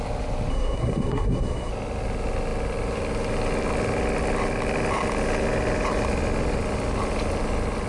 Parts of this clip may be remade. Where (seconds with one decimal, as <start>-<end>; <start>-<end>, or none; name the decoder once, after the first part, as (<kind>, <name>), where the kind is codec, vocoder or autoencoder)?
0.5-1.7 (codec, SNAC)